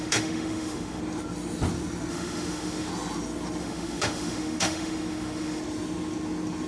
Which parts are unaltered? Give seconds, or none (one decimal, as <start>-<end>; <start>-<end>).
1.0-2.1; 2.9-3.6; 5.6-6.7